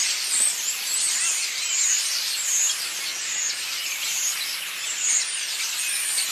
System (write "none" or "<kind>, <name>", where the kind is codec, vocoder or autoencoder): none